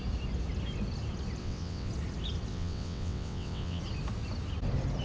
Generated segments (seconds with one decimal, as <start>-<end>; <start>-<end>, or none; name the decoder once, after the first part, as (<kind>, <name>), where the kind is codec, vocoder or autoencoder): 1.4-1.9 (vocoder, WaveNeXt); 2.5-3.8